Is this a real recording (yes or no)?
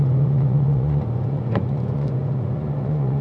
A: no